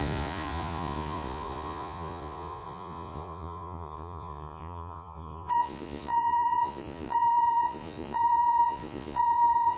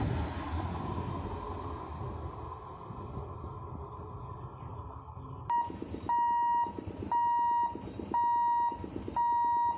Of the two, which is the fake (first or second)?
first